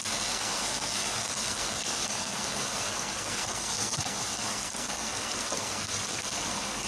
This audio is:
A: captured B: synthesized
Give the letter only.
B